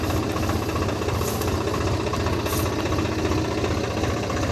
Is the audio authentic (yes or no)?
yes